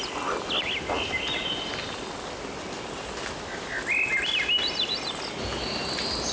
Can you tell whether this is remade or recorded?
recorded